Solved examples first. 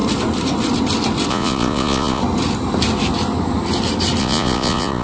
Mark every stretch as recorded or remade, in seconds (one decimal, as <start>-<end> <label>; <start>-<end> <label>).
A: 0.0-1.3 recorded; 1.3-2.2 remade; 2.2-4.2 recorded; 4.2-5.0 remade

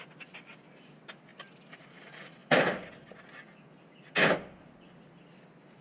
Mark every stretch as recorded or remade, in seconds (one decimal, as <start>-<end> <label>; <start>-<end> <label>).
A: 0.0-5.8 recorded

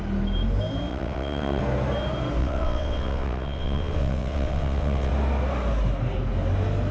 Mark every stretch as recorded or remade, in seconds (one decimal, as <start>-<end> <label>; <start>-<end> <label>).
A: 0.0-0.9 recorded; 0.9-1.6 remade; 1.6-2.4 recorded; 2.4-5.1 remade; 5.1-6.9 recorded

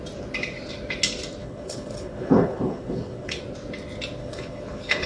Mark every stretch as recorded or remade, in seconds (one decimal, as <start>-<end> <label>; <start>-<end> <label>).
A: 0.0-1.4 recorded; 1.4-3.4 remade; 3.4-4.2 recorded; 4.2-5.1 remade

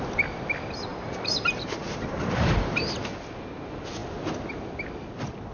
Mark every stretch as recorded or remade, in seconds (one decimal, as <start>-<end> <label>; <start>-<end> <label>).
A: 0.0-0.9 recorded; 0.9-2.9 remade; 2.9-5.5 recorded

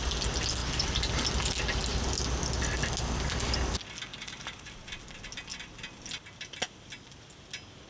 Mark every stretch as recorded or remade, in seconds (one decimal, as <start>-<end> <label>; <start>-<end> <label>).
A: 0.0-4.1 recorded; 4.1-5.0 remade; 5.0-7.9 recorded